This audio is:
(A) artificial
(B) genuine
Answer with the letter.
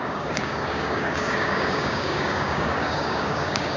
A